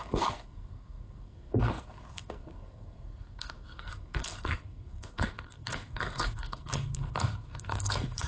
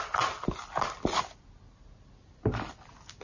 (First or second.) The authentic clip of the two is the second